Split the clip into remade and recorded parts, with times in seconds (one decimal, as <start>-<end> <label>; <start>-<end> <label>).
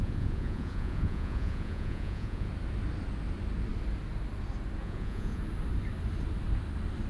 0.0-2.5 remade; 2.5-4.8 recorded; 4.8-5.4 remade; 5.4-7.1 recorded